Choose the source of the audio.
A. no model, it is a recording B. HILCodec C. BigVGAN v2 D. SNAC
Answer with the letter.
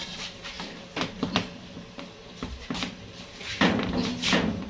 A